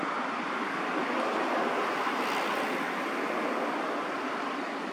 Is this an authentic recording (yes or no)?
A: yes